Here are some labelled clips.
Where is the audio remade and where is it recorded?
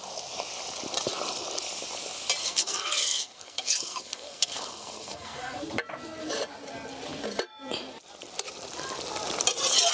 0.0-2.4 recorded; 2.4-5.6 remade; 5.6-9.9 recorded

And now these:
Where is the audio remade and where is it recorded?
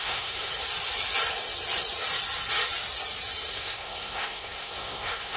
0.0-0.5 remade; 0.5-3.5 recorded; 3.5-5.4 remade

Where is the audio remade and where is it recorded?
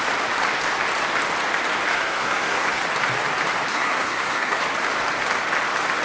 0.0-1.9 recorded; 1.9-2.8 remade; 2.8-3.7 recorded; 3.7-4.6 remade; 4.6-6.0 recorded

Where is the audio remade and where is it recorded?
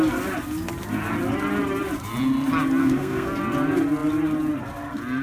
0.0-2.8 recorded; 2.8-3.4 remade; 3.4-5.2 recorded